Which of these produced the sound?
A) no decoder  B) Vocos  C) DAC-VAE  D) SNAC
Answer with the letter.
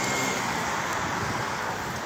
A